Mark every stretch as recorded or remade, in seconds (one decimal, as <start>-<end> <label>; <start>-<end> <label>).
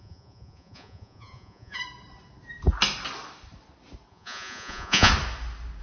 0.0-1.8 remade; 1.8-4.1 recorded; 4.1-5.1 remade; 5.1-5.8 recorded